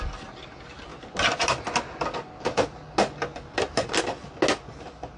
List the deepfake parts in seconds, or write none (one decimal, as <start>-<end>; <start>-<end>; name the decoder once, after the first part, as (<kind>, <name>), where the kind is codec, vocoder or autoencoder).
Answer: none